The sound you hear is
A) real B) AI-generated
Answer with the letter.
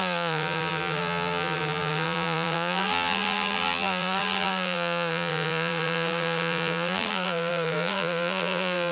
B